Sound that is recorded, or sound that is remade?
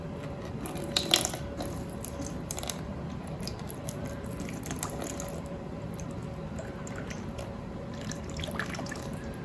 remade